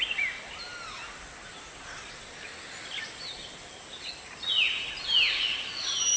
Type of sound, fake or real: real